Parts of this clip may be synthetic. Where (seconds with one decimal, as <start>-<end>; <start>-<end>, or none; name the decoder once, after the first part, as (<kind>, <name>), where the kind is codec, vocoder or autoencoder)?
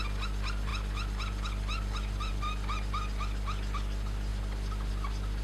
none